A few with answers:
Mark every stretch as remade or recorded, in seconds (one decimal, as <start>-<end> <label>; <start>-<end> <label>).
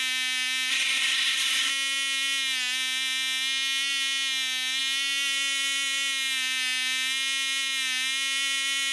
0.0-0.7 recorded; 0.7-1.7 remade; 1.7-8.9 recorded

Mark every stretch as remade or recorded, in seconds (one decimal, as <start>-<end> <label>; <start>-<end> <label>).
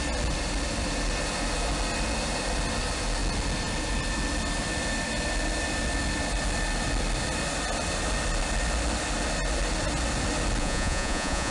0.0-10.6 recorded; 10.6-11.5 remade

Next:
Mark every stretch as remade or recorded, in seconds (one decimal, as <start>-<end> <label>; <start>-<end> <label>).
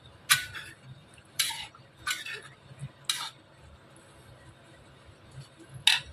0.0-1.0 recorded; 1.0-1.7 remade; 1.7-6.1 recorded